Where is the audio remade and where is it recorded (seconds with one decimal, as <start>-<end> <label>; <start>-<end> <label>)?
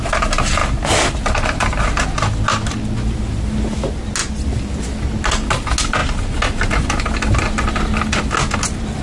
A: 0.0-9.0 recorded